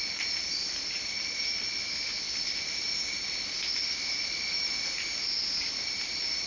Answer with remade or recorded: recorded